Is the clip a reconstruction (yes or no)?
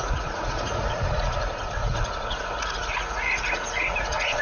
yes